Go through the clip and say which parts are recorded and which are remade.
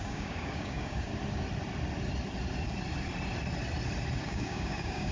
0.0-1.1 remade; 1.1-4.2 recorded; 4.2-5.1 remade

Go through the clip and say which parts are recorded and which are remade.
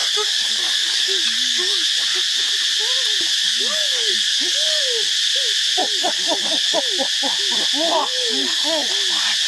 0.0-2.0 remade; 2.0-3.3 recorded; 3.3-4.8 remade; 4.8-5.8 recorded; 5.8-6.8 remade; 6.8-8.0 recorded; 8.0-8.9 remade; 8.9-9.5 recorded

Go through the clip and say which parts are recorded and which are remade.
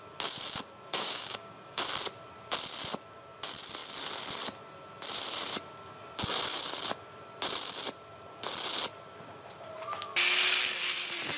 0.0-0.9 recorded; 0.9-1.8 remade; 1.8-11.4 recorded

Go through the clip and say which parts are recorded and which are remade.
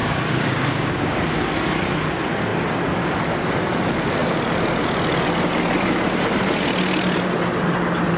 0.0-1.2 remade; 1.2-8.2 recorded